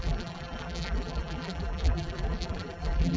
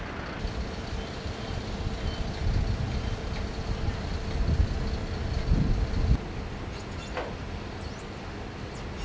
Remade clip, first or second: first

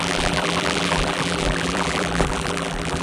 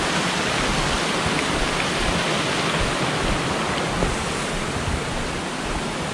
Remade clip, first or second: first